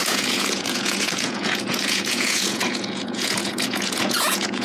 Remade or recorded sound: remade